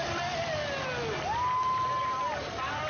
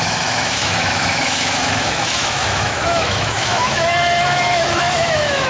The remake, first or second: second